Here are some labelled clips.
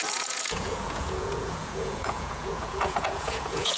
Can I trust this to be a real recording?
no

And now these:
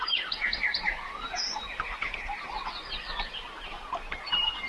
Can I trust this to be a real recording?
no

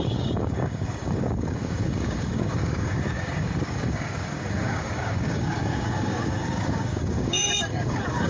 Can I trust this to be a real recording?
no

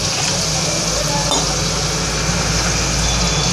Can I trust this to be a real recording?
yes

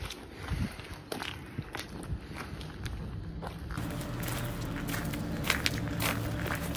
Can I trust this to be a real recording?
yes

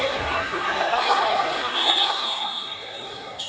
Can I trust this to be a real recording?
no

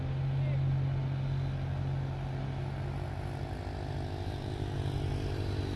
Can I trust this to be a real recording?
yes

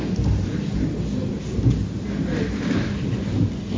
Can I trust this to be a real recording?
yes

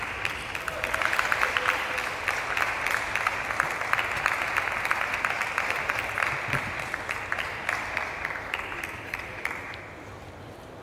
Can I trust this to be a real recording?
yes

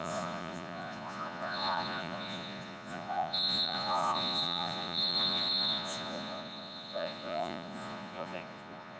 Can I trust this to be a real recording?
no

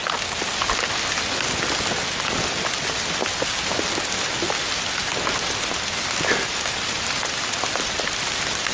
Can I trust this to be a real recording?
yes